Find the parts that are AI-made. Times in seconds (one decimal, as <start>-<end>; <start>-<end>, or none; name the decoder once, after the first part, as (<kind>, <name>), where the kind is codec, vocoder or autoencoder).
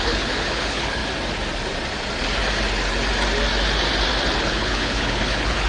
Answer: 0.0-1.0 (codec, HILCodec); 4.4-5.7